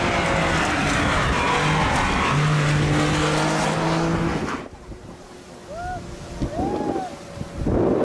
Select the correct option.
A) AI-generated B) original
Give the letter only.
B